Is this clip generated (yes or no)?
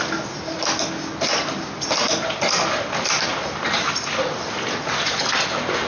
no